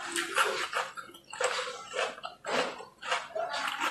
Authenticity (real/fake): real